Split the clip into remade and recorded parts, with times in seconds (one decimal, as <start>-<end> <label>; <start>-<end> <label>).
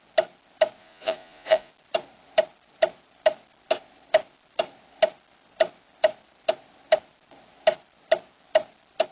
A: 0.0-0.8 recorded; 0.8-1.7 remade; 1.7-9.1 recorded